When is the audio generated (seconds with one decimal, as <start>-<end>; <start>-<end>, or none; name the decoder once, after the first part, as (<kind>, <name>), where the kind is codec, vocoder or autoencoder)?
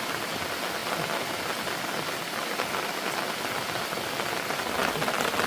none